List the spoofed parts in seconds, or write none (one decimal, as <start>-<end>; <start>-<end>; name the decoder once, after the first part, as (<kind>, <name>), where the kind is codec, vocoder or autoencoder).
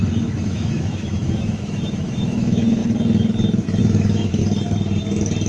0.0-2.8 (autoencoder, DAC-VAE); 3.8-4.4